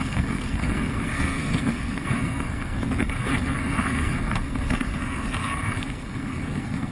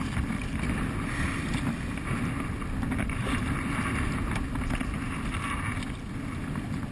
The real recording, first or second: second